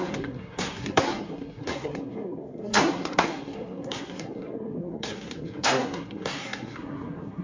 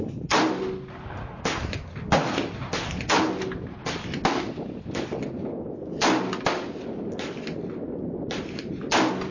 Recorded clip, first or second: second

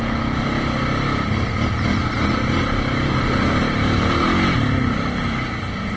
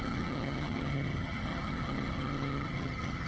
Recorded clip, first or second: first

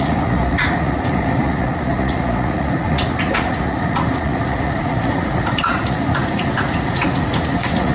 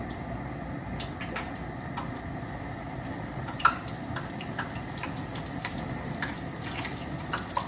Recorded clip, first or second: second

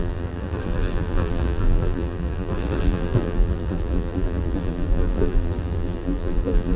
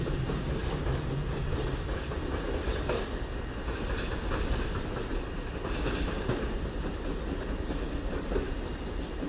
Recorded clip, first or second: second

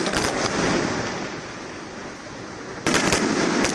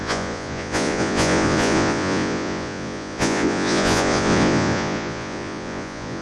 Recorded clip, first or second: first